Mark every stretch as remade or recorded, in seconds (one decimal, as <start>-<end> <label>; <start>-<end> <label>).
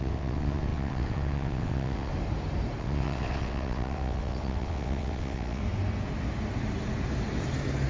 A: 0.0-2.1 remade; 2.1-2.8 recorded; 2.8-5.6 remade; 5.6-7.9 recorded